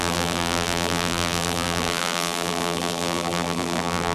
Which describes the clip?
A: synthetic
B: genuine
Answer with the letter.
A